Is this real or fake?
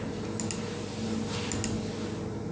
real